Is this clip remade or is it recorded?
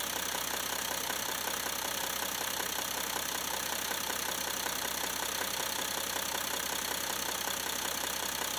remade